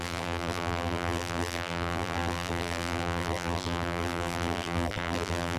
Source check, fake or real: fake